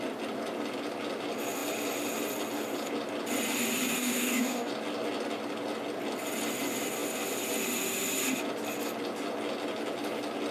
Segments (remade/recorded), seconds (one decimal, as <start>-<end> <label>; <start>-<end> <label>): 0.0-3.9 recorded; 3.9-4.7 remade; 4.7-10.5 recorded